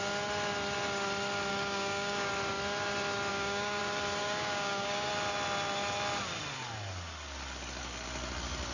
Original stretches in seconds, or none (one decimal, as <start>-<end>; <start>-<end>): 0.0-1.5; 2.3-3.3; 3.8-4.2; 5.1-8.7